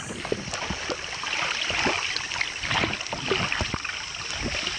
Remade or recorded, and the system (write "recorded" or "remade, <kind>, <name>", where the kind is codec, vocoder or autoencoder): recorded